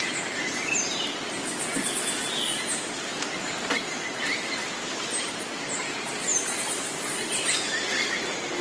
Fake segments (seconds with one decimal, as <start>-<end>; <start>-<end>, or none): 3.1-3.7; 4.6-5.5; 6.3-7.4